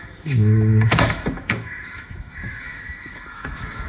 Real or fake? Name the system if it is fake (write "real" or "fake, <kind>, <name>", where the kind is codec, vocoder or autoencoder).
fake, autoencoder, DAC-VAE